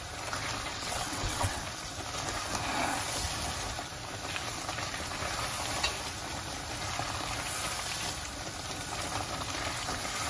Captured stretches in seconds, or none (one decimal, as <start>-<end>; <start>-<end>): 0.0-0.7; 1.6-10.3